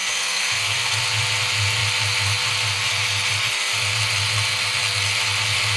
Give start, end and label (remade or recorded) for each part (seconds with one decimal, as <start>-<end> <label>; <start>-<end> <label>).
0.0-1.0 remade; 1.0-5.8 recorded